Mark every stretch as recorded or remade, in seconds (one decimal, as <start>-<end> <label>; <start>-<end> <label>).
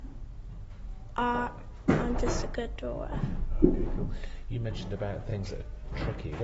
0.0-6.4 recorded